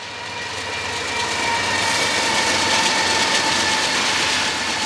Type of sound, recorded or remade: recorded